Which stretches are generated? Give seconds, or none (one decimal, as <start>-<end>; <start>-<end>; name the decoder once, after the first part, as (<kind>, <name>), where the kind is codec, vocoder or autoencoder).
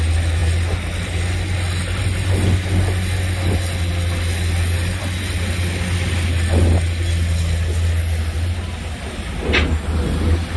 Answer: none